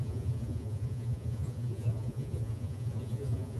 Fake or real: fake